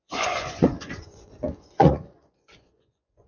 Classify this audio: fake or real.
fake